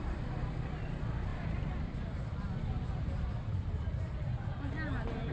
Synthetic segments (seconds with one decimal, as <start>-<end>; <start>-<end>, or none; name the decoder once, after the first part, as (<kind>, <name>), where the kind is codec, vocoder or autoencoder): 1.3-4.5 (vocoder, BigVGAN v2)